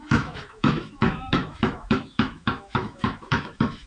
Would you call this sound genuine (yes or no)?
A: no